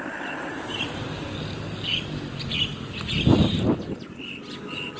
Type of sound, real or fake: real